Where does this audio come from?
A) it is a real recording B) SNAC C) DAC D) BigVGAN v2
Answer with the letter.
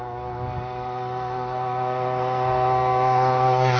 B